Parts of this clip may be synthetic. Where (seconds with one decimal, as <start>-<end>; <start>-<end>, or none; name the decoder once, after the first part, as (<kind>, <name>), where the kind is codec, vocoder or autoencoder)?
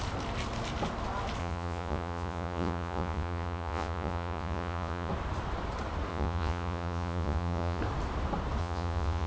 1.4-5.1 (vocoder, Vocos); 6.1-7.8; 8.6-9.3